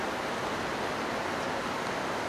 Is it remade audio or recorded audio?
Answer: recorded